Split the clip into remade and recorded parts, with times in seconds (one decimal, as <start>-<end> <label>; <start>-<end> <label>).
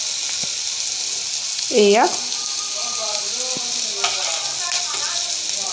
0.0-5.7 recorded